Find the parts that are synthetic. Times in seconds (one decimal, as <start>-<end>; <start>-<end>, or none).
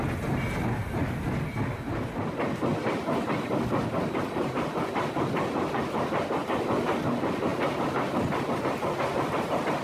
2.7-6.3